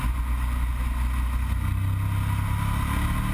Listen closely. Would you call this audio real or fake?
real